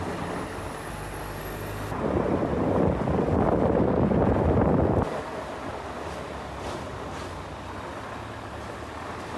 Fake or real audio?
real